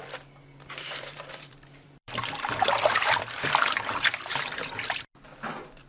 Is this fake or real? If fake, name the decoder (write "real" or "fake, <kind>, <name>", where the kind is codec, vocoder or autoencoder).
fake, vocoder, BigVGAN v2